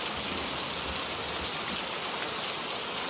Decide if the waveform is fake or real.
real